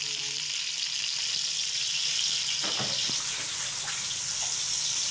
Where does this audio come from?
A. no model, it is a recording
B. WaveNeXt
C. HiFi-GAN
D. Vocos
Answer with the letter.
A